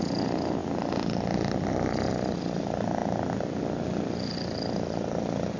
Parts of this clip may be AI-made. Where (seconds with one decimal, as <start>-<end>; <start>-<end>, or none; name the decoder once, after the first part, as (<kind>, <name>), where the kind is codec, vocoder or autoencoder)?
none